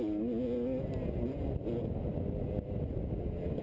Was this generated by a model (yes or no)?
no